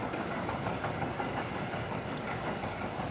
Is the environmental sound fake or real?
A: fake